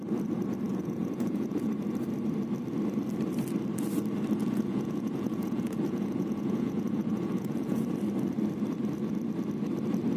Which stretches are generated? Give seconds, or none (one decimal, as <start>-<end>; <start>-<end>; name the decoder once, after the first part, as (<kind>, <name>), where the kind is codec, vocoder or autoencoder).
0.7-1.7 (vocoder, Vocos); 4.4-7.8